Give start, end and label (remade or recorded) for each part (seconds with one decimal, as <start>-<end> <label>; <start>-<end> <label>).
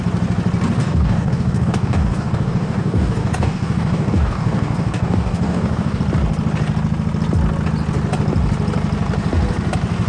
0.0-0.8 recorded; 0.8-6.0 remade; 6.0-10.1 recorded